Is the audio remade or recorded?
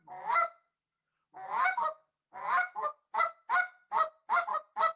recorded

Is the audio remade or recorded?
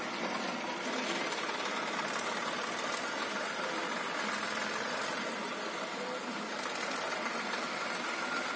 recorded